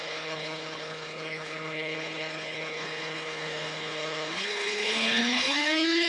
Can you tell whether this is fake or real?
fake